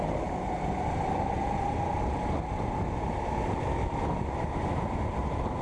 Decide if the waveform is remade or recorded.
recorded